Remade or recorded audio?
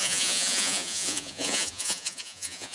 remade